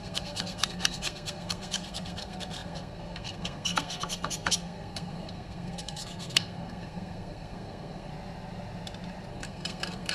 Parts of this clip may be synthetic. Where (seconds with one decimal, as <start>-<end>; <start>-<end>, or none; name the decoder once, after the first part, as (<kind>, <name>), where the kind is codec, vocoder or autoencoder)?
0.0-8.1 (codec, SNAC); 9.3-10.1